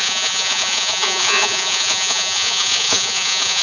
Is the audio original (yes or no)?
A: no